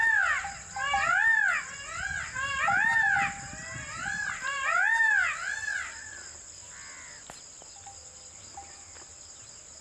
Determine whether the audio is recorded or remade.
recorded